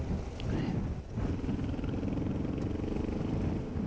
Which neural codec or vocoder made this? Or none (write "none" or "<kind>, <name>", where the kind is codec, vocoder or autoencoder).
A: none